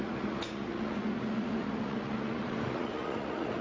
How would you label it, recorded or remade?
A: remade